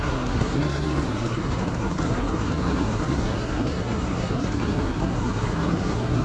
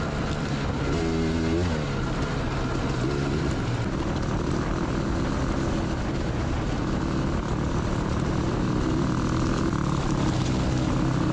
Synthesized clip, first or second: first